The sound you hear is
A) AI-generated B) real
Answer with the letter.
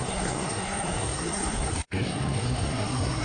A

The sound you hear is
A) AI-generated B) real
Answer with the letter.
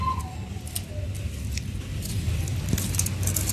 B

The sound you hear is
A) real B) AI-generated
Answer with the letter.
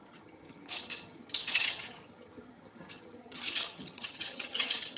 B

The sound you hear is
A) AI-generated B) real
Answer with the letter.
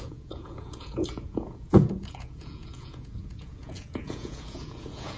A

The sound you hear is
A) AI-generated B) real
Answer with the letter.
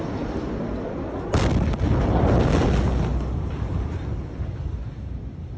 B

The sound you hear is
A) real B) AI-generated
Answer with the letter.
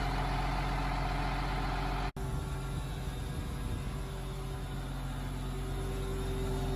A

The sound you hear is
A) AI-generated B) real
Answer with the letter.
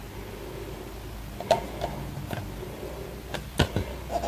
B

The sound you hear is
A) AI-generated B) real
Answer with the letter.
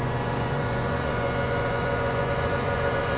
A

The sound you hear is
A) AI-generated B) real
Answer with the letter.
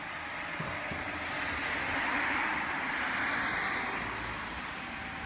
B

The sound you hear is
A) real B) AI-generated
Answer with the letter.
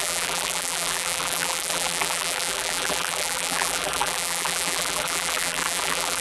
B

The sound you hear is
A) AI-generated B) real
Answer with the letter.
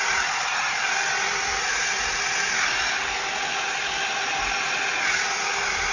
B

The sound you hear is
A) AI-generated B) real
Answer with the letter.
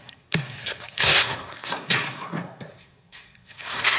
A